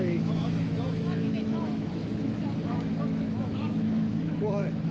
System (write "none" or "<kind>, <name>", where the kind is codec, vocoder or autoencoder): autoencoder, DAC-VAE